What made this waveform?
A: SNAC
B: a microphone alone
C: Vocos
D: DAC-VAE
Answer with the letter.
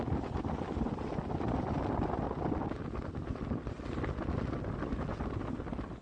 B